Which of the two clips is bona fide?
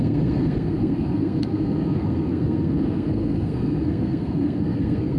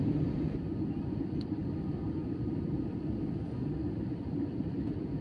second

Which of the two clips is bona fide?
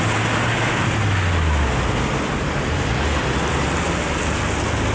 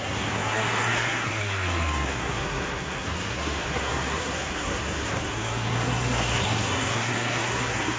first